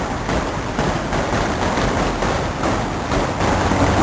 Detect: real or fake real